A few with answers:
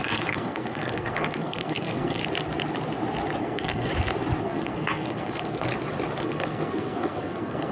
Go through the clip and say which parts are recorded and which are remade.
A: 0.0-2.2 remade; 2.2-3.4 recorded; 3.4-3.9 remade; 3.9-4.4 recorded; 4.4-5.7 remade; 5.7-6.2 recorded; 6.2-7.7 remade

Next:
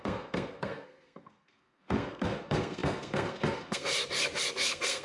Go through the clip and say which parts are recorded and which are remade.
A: 0.0-3.9 remade; 3.9-4.5 recorded; 4.5-5.0 remade

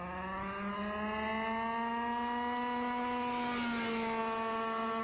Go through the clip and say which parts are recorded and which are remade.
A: 0.0-5.0 recorded

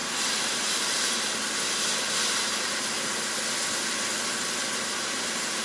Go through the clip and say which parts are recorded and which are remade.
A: 0.0-5.6 recorded

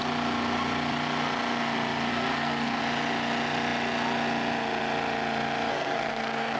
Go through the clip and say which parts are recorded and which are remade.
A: 0.0-2.1 recorded; 2.1-2.8 remade; 2.8-5.7 recorded; 5.7-6.6 remade

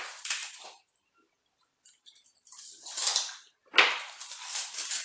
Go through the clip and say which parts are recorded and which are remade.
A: 0.0-5.0 recorded

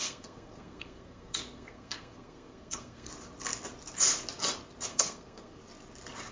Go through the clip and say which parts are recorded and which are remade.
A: 0.0-3.1 remade; 3.1-4.9 recorded; 4.9-5.6 remade; 5.6-6.3 recorded

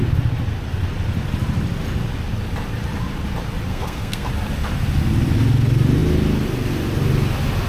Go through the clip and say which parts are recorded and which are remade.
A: 0.0-3.7 recorded; 3.7-4.3 remade; 4.3-7.7 recorded